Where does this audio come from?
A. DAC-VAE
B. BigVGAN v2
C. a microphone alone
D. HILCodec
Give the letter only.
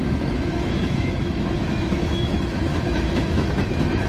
A